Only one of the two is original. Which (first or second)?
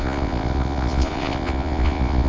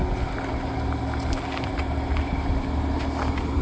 second